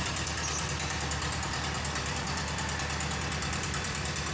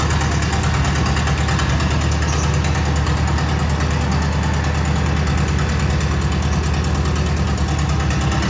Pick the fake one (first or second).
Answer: first